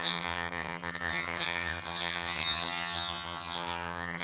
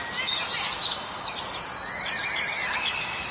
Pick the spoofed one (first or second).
first